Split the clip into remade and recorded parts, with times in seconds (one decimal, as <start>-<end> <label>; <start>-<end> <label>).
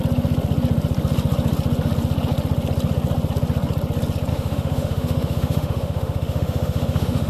0.0-4.3 recorded; 4.3-7.3 remade